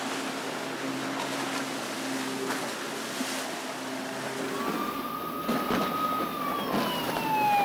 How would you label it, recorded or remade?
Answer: recorded